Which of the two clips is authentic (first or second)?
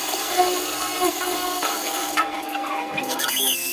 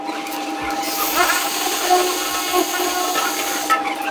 second